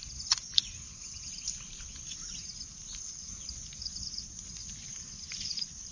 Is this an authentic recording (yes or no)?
yes